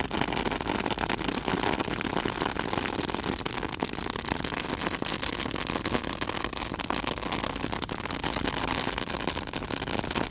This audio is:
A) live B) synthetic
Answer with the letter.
A